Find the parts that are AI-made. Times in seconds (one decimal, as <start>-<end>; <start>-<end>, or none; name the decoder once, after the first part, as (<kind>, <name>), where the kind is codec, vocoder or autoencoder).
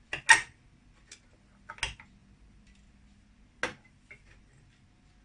none